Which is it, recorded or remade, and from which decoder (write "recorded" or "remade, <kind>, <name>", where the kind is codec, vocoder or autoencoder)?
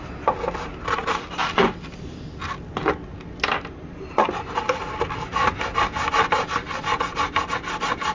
recorded